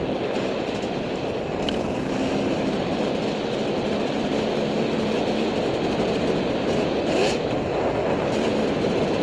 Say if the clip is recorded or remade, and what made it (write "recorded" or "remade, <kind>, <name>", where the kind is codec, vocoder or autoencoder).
recorded